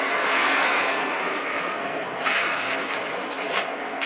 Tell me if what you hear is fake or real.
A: fake